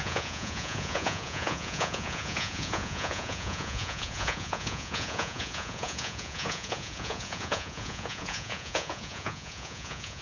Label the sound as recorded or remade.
remade